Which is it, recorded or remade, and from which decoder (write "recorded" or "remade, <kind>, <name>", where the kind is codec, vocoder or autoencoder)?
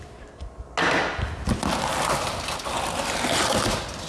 recorded